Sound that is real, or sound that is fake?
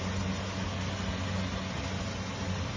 real